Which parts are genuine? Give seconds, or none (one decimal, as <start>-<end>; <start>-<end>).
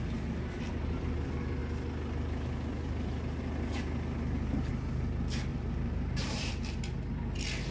0.0-5.5; 6.5-7.7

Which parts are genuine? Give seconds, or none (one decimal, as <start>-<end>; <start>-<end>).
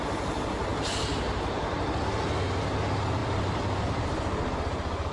0.0-0.7; 1.8-3.2; 4.0-5.1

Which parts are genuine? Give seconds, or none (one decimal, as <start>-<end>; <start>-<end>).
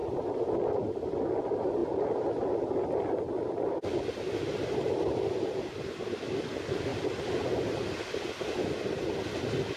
0.0-1.4; 6.9-9.8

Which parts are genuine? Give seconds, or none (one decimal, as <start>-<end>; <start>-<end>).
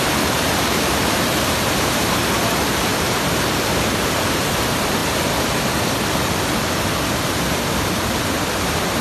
2.9-3.5; 5.0-8.6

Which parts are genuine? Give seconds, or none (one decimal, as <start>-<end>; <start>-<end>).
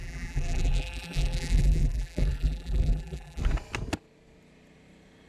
3.4-5.3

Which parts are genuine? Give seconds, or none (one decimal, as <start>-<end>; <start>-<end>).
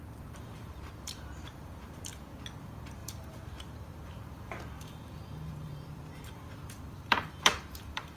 2.1-2.6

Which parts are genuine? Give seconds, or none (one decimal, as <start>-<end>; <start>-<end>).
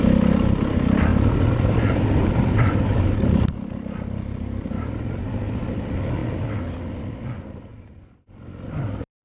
0.0-1.1; 5.2-6.2; 6.9-7.7